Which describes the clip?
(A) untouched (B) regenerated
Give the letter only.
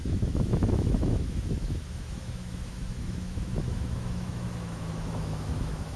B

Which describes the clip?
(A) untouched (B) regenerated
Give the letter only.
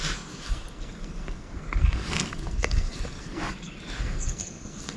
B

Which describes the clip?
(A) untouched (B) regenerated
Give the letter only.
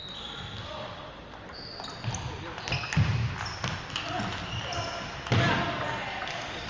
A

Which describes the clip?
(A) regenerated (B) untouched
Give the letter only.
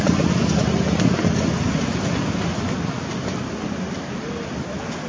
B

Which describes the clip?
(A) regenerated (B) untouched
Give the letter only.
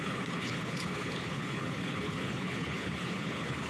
A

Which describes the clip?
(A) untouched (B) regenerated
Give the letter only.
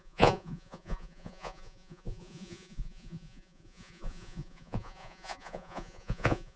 B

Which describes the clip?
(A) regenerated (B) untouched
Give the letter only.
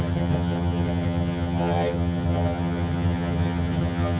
A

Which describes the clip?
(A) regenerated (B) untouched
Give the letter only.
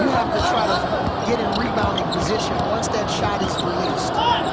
B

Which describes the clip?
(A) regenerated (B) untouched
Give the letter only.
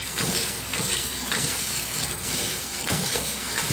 A